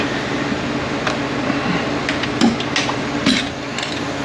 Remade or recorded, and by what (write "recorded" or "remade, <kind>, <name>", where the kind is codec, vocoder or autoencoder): recorded